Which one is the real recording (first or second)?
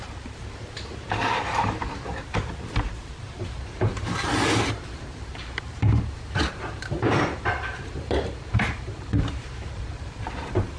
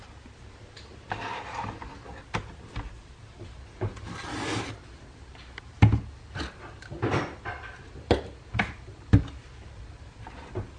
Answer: second